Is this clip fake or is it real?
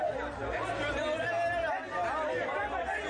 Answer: real